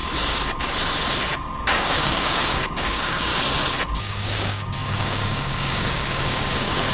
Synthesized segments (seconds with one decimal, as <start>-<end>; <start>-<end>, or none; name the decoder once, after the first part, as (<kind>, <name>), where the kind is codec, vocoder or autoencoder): 1.7-3.3 (codec, DAC); 4.0-6.9